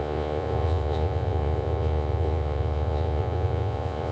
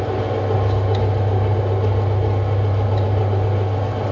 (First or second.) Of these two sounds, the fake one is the first